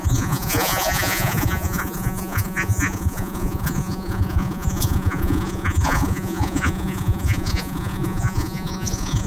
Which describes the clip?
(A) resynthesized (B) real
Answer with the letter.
A